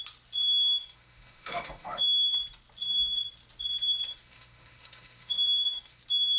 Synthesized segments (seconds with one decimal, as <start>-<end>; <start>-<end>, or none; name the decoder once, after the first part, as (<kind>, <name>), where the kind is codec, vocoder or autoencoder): 0.6-2.0 (autoencoder, DAC-VAE); 4.1-6.0